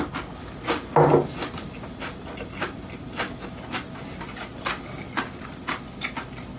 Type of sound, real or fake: real